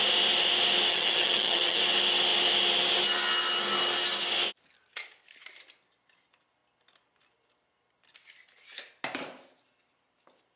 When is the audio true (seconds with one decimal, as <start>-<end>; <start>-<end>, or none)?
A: 0.0-0.9; 1.8-10.6